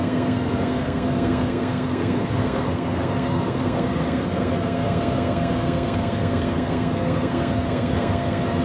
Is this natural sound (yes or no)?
no